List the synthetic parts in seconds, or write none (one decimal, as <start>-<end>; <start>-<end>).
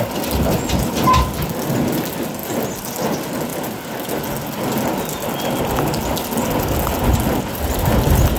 none